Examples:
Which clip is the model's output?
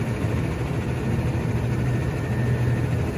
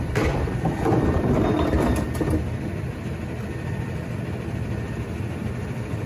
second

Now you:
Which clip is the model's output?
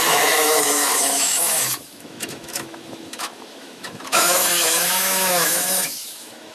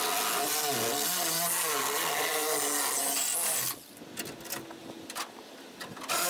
first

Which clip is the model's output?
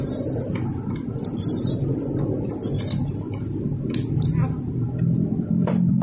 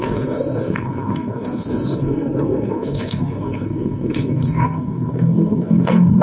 second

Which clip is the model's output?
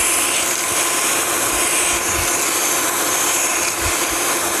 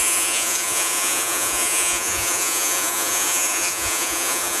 second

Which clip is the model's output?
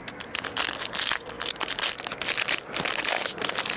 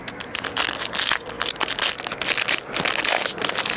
first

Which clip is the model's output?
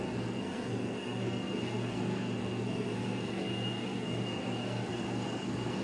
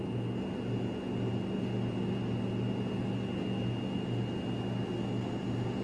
first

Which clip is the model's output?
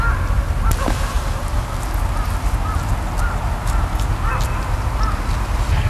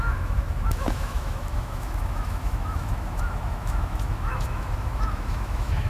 second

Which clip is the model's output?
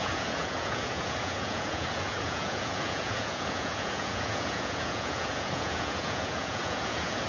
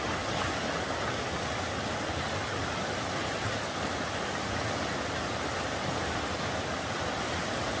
first